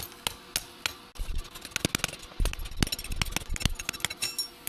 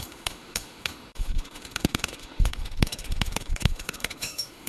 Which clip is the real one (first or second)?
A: first